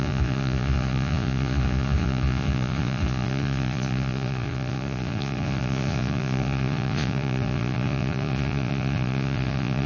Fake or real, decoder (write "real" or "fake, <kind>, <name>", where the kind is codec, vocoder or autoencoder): fake, vocoder, Vocos